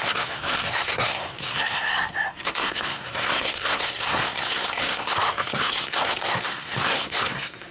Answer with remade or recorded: remade